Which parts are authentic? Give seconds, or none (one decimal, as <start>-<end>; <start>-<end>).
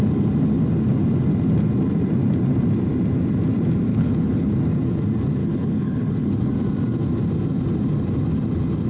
0.0-3.9; 4.5-5.4; 6.5-8.9